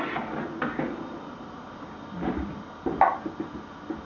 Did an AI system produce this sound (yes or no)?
no